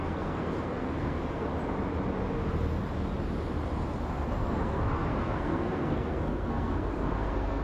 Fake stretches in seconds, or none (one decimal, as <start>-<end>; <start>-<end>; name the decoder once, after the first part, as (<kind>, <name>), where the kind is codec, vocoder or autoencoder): 0.0-1.5 (codec, SNAC); 4.1-7.6